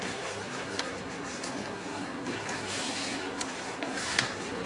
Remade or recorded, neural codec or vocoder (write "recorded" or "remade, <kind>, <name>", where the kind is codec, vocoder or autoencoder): remade, codec, SNAC